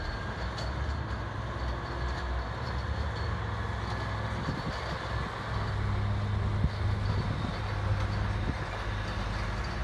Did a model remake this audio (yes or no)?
no